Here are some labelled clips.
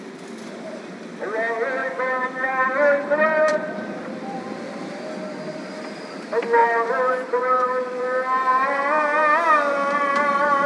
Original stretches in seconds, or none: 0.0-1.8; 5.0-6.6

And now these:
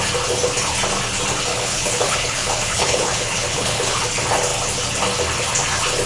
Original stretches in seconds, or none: 0.0-1.5; 4.0-6.1

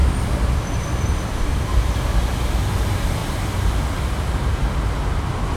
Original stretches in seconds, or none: 1.7-3.2; 3.9-5.6

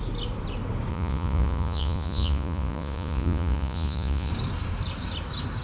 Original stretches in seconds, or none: 0.0-0.9; 4.3-5.6